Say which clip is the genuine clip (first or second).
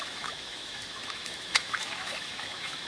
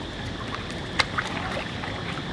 second